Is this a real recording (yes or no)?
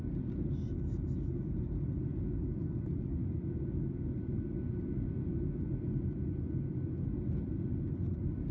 yes